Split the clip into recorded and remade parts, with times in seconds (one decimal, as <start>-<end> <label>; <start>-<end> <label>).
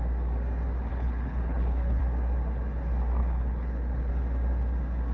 0.0-0.9 recorded; 0.9-2.0 remade; 2.0-3.2 recorded; 3.2-4.1 remade; 4.1-5.1 recorded